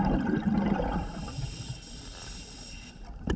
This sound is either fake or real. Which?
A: real